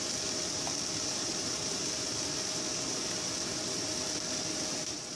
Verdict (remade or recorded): recorded